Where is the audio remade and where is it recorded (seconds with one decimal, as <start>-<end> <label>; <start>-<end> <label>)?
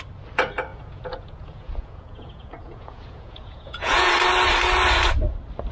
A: 0.0-0.7 recorded; 0.7-4.1 remade; 4.1-5.7 recorded